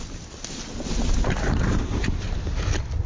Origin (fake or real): real